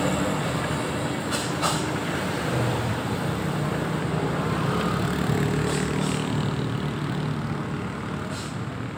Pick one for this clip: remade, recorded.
recorded